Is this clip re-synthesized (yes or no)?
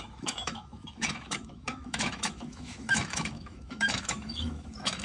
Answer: yes